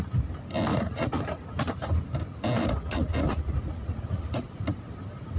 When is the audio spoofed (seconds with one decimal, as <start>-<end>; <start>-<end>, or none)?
0.7-1.2; 2.6-4.7